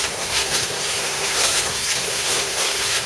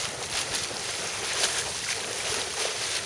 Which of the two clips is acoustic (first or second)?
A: second